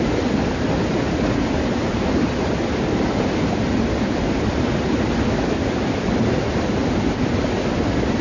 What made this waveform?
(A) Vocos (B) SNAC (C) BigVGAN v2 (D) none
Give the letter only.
D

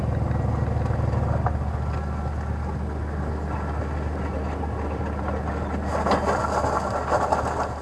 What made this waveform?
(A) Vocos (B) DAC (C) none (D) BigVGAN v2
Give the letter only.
C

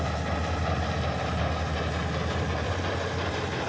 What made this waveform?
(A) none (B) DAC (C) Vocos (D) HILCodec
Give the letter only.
A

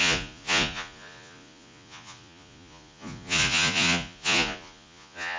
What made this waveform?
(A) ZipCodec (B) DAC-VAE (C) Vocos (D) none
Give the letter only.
C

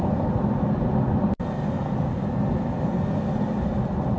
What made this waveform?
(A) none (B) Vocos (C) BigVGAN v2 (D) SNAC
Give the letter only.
A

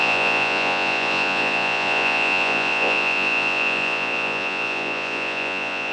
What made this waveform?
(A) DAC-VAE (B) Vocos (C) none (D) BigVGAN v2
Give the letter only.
B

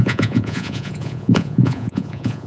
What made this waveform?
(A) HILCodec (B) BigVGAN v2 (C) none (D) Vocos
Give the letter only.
D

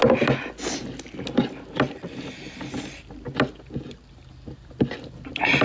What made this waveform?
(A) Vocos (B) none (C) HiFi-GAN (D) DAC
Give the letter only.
B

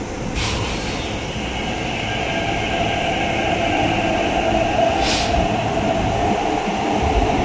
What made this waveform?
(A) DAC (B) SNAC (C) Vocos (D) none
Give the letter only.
D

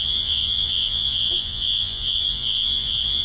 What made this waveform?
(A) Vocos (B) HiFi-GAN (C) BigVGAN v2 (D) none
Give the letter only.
A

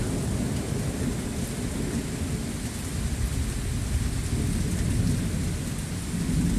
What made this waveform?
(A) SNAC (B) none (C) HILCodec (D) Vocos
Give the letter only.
B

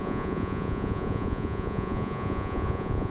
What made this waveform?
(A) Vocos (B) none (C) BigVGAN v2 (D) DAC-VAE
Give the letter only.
A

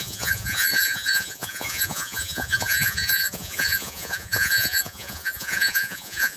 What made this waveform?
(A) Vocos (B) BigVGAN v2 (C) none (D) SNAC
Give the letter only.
A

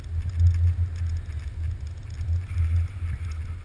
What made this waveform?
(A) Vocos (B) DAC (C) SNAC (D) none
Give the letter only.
D